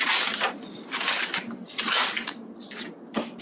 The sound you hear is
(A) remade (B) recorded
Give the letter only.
B